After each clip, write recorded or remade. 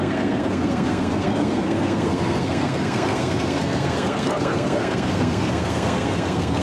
remade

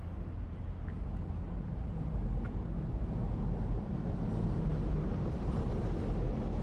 recorded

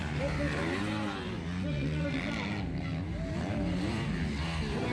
recorded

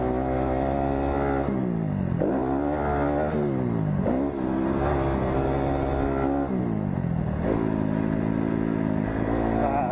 recorded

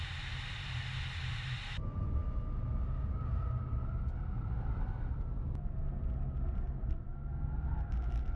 recorded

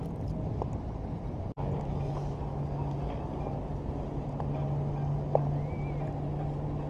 recorded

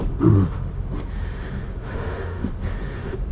remade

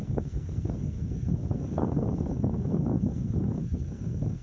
remade